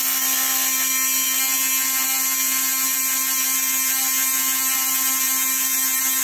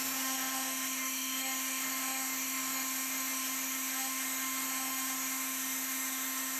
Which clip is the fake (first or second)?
second